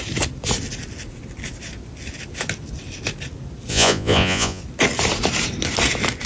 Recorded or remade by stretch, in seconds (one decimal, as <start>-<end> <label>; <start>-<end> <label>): 0.0-3.7 recorded; 3.7-4.6 remade; 4.6-6.3 recorded

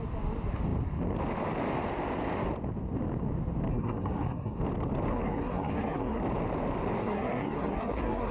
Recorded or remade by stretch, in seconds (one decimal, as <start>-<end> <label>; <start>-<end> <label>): 0.0-3.7 recorded; 3.7-4.6 remade; 4.6-5.1 recorded; 5.1-6.2 remade; 6.2-7.0 recorded; 7.0-8.3 remade

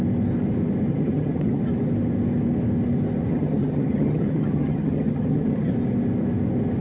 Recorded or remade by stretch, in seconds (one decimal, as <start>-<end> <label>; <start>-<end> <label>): 0.0-0.9 recorded; 0.9-1.6 remade; 1.6-3.3 recorded; 3.3-5.7 remade; 5.7-6.8 recorded